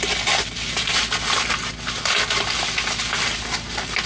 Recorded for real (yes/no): yes